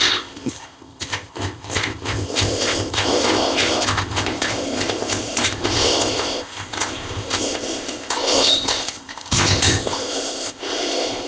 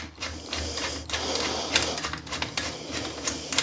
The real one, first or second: second